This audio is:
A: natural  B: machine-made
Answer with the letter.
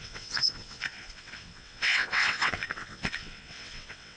B